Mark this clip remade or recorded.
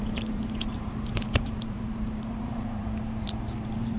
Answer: remade